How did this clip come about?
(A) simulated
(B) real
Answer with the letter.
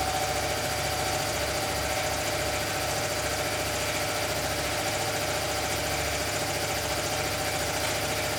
B